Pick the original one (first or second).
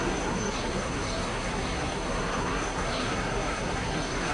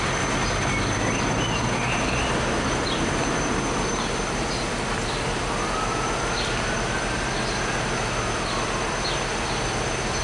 second